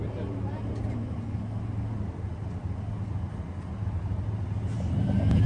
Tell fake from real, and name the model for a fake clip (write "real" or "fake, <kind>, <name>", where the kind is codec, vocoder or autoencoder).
real